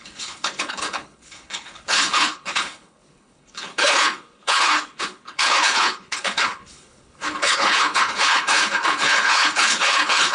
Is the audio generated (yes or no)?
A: yes